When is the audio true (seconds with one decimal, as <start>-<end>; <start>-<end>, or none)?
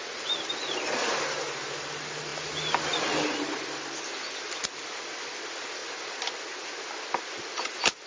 0.0-8.1